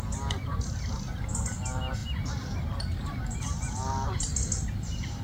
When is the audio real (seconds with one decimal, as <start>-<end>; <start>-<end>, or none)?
0.0-5.2